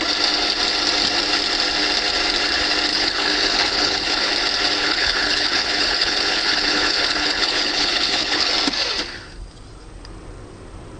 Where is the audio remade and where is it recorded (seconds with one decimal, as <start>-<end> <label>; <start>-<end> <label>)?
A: 0.0-2.9 recorded; 2.9-4.3 remade; 4.3-4.8 recorded; 4.8-8.5 remade; 8.5-11.0 recorded